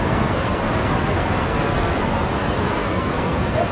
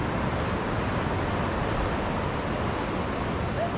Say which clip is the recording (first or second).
second